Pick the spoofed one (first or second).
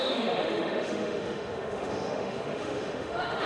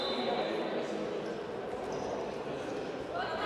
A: first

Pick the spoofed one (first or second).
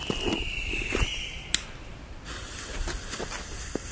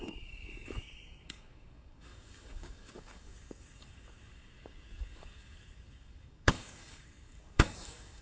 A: second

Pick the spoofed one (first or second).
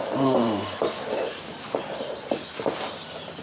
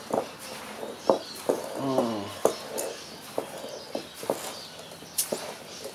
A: first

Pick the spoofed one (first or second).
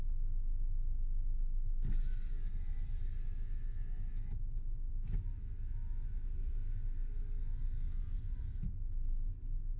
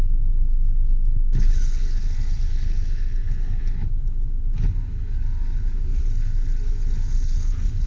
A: second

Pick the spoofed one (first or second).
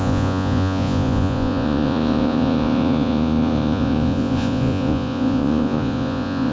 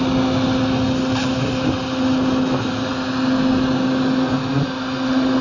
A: first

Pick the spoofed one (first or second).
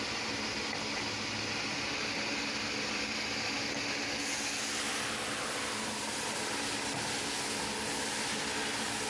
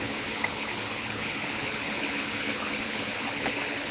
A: second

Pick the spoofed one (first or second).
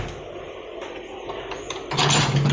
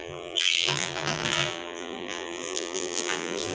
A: second